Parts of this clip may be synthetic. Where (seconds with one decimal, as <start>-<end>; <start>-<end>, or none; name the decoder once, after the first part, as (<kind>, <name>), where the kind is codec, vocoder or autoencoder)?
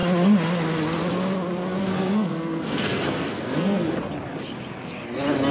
1.8-3.9 (codec, SNAC)